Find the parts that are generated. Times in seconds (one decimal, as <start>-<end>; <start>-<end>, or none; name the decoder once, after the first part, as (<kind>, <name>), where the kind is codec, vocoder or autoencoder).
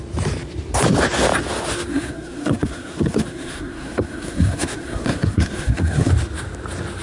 1.9-6.1 (codec, SNAC)